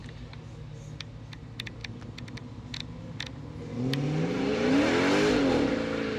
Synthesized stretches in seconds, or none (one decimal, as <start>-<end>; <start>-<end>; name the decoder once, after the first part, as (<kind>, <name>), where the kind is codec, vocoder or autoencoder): none